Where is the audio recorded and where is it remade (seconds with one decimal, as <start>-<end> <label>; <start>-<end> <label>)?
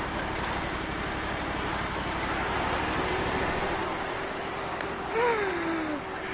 0.0-6.3 recorded